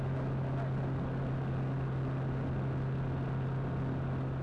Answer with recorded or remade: recorded